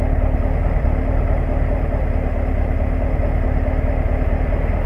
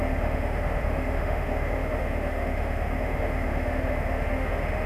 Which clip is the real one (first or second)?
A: first